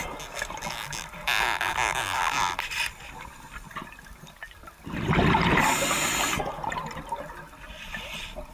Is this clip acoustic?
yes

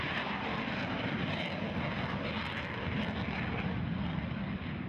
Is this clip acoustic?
yes